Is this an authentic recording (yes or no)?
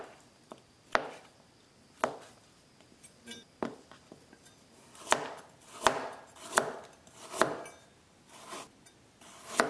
yes